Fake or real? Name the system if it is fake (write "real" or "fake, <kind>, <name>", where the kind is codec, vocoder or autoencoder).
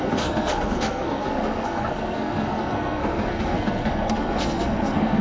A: fake, codec, SNAC